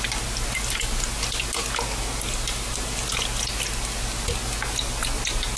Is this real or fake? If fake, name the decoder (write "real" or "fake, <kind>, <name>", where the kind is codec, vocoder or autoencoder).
real